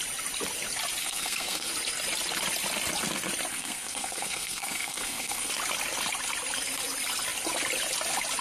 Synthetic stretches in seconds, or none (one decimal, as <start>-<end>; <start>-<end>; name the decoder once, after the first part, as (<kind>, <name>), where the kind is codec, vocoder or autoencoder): 1.0-1.7 (codec, SNAC); 3.5-5.5